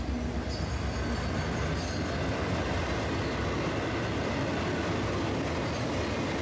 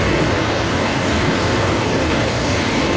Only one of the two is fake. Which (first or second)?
second